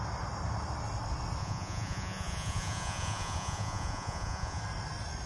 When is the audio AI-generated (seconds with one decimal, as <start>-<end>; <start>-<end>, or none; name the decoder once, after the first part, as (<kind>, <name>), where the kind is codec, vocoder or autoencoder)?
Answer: 1.4-4.6 (vocoder, Vocos)